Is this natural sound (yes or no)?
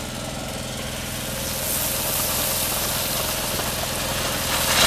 yes